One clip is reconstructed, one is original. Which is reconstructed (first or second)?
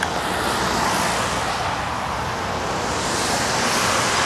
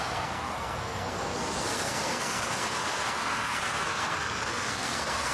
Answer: second